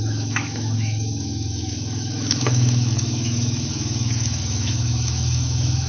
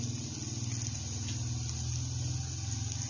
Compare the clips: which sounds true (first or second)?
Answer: second